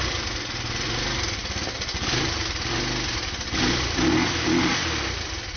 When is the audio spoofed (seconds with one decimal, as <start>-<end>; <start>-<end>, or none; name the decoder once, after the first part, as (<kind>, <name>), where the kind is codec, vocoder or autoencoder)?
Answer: none